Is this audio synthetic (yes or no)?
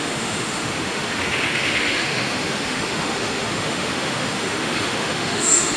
yes